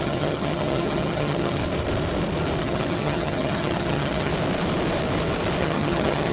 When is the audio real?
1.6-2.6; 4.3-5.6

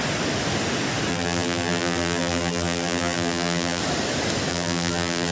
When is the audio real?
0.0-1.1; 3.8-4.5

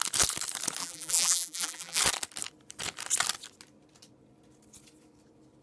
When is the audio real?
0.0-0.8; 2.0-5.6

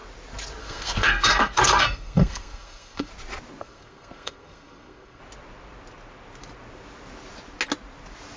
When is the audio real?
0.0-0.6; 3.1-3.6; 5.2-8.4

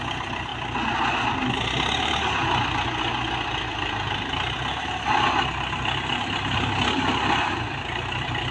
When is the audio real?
0.0-8.5

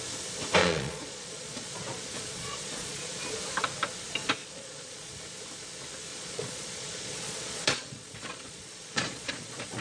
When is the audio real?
0.0-0.6; 3.2-4.4; 5.2-6.1

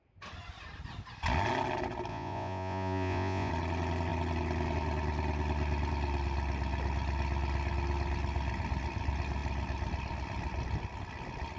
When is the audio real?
0.0-2.1; 3.5-11.6

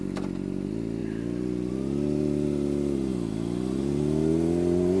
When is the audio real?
0.0-5.0